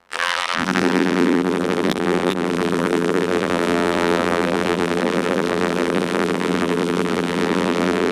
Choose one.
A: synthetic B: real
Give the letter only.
A